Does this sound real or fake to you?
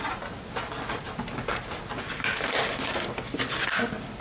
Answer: real